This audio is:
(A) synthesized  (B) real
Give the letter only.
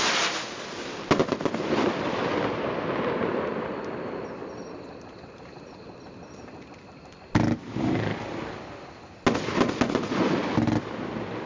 B